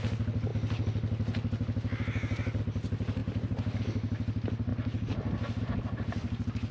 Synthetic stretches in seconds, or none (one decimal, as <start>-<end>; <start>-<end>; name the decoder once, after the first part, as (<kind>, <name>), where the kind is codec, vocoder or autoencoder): none